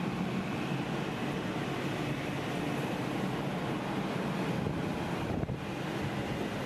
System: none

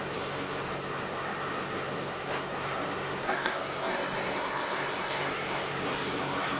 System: codec, SNAC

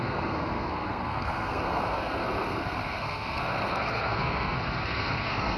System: codec, SNAC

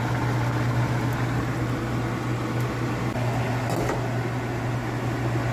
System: none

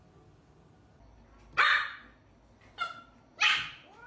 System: none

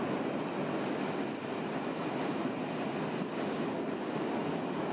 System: none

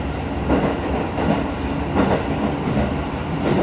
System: none